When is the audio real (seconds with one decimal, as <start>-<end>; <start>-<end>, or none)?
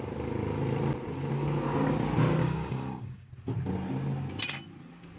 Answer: 0.0-2.4; 3.3-5.2